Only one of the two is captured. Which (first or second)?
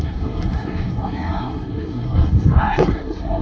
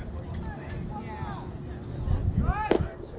second